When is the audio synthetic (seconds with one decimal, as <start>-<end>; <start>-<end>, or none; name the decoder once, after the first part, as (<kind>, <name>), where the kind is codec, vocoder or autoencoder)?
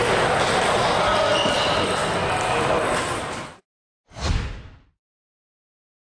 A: none